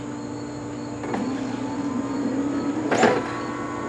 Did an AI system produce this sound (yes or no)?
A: no